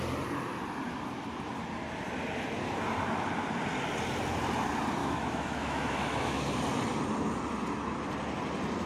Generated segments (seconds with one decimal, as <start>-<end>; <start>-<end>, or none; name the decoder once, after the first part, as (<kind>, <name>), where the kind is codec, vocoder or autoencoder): 5.0-6.4 (autoencoder, DAC-VAE)